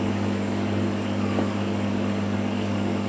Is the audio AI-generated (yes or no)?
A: yes